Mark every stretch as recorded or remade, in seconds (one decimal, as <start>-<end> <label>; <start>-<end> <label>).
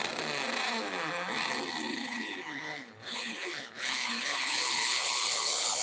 0.0-1.9 recorded; 1.9-5.8 remade